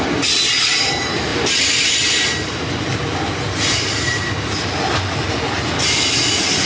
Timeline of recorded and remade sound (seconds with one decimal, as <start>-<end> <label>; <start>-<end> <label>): 0.0-6.7 recorded